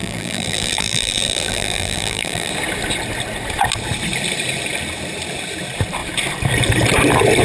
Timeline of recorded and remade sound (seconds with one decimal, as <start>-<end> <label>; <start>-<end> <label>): 0.0-2.5 remade; 2.5-7.4 recorded